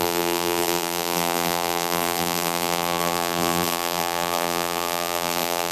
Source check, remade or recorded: remade